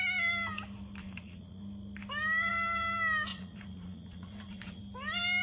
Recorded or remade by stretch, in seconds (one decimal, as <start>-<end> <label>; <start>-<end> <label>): 0.0-1.0 recorded; 1.0-1.6 remade; 1.6-3.3 recorded; 3.3-4.8 remade; 4.8-5.4 recorded